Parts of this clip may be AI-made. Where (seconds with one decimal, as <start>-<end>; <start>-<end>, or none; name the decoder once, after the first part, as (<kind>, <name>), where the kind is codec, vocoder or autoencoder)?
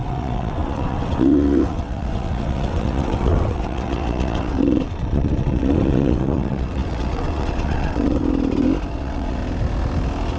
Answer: 0.0-8.2 (vocoder, WaveNeXt); 8.9-9.4